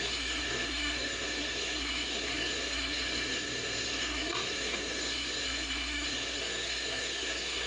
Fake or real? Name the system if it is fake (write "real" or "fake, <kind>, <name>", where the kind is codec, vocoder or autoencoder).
fake, codec, SNAC